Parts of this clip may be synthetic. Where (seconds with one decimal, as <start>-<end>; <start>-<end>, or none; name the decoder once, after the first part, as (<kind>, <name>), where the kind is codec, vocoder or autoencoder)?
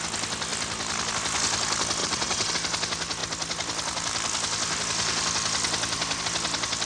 2.0-2.5 (vocoder, WaveNeXt)